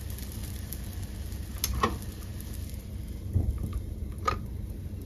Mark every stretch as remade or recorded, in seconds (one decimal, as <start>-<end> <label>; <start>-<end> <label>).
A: 0.0-5.1 recorded